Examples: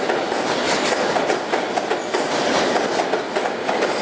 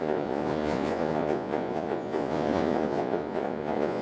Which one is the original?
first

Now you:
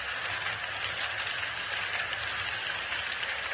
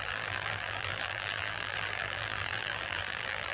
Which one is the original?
first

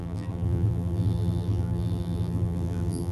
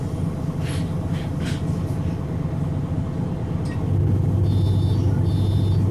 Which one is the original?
second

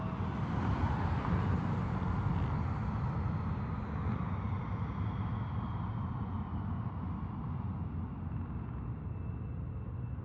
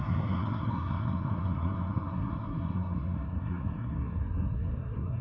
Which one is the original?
first